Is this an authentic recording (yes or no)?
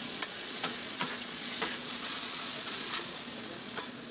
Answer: no